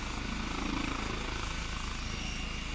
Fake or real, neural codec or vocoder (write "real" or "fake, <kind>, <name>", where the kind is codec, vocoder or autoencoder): real